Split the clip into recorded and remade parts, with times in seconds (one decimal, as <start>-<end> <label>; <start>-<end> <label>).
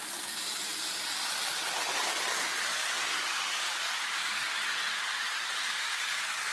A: 0.0-2.7 recorded; 2.7-6.5 remade